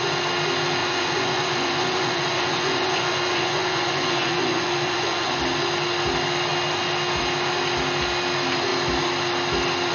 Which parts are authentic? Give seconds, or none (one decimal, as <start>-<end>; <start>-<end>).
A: 0.0-0.8; 5.4-9.9

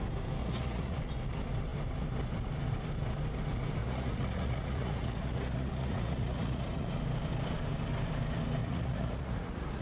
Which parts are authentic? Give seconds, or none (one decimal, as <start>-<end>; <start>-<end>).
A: 0.0-0.4; 1.0-3.8; 6.9-8.6

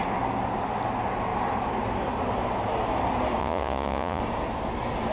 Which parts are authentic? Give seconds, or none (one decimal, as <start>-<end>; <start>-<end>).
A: 0.0-3.4; 4.2-5.1